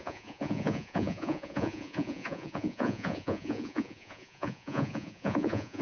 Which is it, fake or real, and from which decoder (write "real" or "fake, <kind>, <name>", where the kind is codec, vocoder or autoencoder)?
fake, vocoder, Vocos